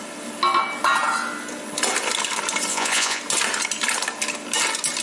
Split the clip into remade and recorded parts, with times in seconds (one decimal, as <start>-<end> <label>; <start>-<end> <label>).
0.0-2.7 recorded; 2.7-3.2 remade; 3.2-5.0 recorded